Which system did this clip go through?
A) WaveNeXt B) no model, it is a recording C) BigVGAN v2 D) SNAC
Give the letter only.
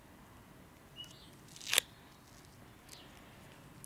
B